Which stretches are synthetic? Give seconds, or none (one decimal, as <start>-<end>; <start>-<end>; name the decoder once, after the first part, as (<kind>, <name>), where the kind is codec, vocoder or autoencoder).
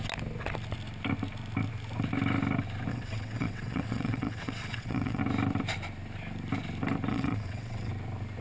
2.9-5.2 (vocoder, WaveNeXt); 7.1-7.9